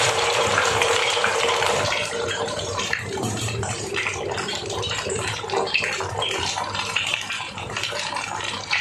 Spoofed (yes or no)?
yes